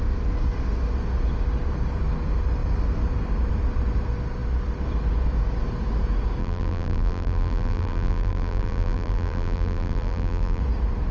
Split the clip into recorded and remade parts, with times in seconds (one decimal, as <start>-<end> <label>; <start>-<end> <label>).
0.0-6.4 recorded; 6.4-10.6 remade; 10.6-11.1 recorded